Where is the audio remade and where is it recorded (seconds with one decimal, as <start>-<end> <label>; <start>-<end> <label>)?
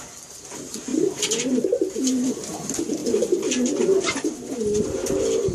0.0-5.5 recorded